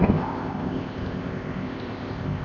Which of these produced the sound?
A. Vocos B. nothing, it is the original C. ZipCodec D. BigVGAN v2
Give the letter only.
C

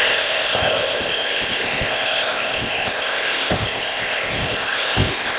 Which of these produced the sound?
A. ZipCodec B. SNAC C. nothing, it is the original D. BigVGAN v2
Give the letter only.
A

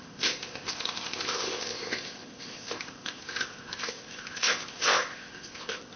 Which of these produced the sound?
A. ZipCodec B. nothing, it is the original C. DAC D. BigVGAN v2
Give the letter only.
A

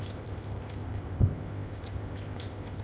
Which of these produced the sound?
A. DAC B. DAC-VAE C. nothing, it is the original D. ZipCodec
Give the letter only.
D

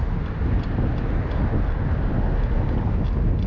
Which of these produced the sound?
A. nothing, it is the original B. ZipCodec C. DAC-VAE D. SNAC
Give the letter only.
A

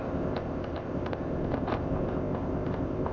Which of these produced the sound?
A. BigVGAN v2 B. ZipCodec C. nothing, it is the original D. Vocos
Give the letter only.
B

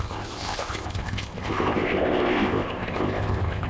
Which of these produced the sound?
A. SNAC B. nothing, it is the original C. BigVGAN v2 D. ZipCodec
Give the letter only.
D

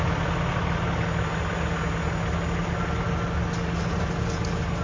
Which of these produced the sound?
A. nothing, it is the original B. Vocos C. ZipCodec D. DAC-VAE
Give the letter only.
A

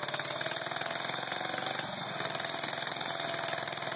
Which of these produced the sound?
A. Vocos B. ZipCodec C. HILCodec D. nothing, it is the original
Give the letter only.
D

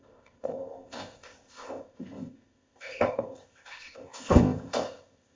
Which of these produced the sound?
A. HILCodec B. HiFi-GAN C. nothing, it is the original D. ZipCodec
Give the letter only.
D